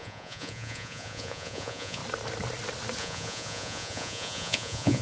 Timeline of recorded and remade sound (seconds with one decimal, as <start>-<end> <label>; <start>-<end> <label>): 0.0-2.0 remade; 2.0-3.0 recorded; 3.0-5.0 remade